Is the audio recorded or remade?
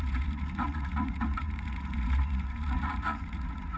remade